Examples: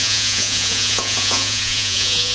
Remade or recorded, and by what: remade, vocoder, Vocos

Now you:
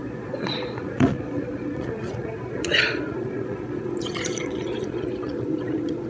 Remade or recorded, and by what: remade, vocoder, Vocos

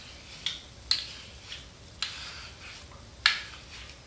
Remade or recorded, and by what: recorded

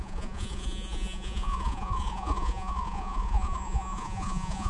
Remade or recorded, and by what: remade, vocoder, Vocos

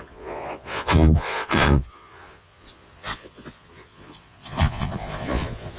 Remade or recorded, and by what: remade, vocoder, Vocos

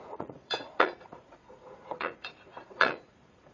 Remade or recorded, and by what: remade, vocoder, Vocos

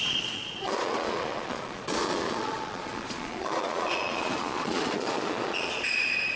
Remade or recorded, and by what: remade, vocoder, Vocos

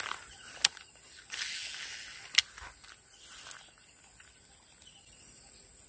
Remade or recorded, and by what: recorded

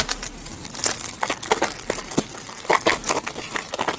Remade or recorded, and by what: recorded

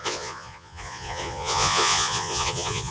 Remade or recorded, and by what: remade, vocoder, Vocos